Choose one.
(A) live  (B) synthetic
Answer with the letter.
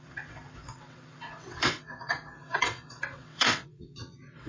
B